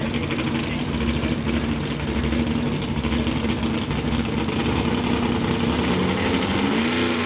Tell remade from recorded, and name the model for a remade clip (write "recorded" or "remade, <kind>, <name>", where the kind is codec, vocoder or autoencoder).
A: recorded